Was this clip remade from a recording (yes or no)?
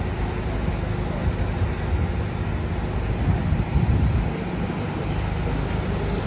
no